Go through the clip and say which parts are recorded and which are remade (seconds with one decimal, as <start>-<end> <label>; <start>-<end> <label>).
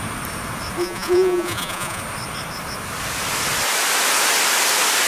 0.0-0.8 recorded; 0.8-2.0 remade; 2.0-5.1 recorded